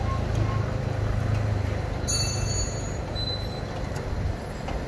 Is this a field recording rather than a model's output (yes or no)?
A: yes